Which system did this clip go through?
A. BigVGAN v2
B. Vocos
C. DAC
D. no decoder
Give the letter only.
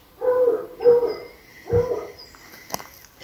D